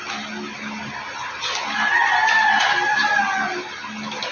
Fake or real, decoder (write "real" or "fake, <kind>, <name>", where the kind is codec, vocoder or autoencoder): real